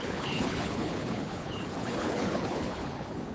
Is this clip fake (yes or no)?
yes